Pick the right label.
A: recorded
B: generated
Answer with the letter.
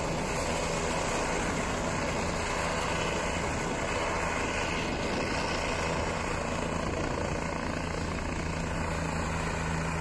A